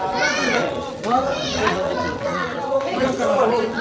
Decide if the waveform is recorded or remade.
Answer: remade